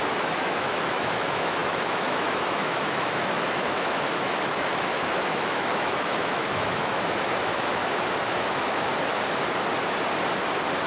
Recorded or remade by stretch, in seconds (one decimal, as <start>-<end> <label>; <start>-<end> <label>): 0.0-7.8 remade; 7.8-8.3 recorded; 8.3-8.9 remade; 8.9-10.9 recorded